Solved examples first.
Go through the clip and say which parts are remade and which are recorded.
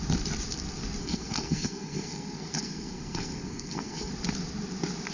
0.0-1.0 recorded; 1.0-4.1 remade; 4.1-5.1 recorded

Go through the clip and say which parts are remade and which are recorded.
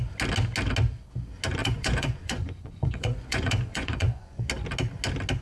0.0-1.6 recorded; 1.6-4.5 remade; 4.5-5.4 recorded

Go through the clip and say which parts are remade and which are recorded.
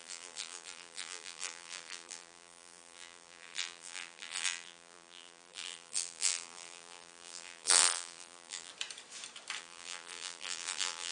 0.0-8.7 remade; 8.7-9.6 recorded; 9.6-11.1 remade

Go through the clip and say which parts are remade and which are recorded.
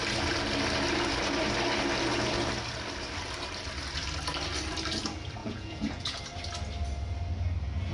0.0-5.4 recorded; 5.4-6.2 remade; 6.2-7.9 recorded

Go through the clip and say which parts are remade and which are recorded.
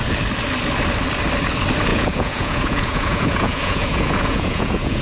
0.0-1.9 recorded; 1.9-5.0 remade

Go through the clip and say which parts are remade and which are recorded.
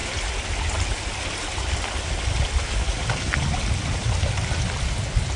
0.0-5.4 recorded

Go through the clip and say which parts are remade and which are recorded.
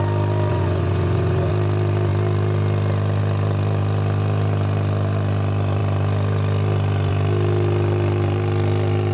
0.0-0.5 recorded; 0.5-1.5 remade; 1.5-9.1 recorded